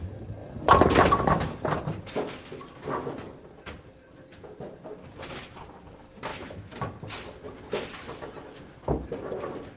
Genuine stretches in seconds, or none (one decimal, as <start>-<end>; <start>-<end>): 0.0-6.3; 6.9-9.8